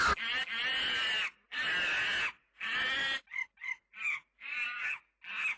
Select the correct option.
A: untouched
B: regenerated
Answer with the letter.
A